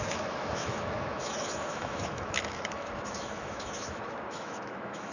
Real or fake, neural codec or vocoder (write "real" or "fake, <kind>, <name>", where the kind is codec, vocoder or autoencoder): fake, autoencoder, DAC-VAE